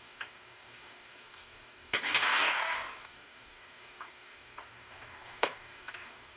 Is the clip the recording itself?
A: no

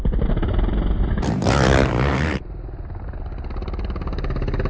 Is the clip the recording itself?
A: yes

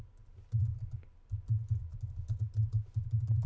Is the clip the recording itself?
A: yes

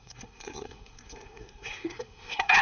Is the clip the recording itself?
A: no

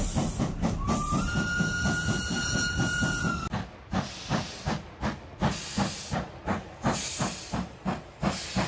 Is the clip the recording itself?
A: yes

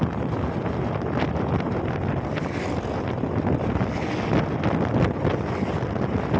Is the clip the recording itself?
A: yes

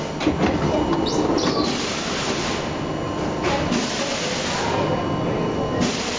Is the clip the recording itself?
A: yes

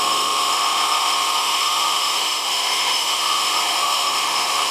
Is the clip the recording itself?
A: no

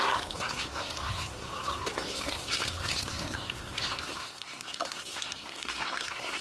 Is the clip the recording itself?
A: no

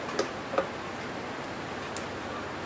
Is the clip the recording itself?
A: yes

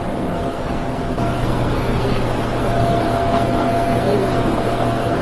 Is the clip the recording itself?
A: no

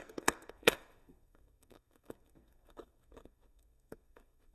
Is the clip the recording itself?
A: no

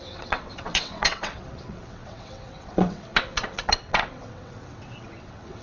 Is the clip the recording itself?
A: no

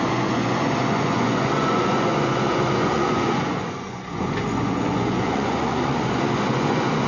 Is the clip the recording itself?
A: no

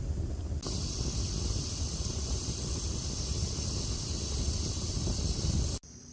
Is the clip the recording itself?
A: yes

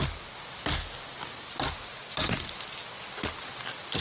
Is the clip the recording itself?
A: yes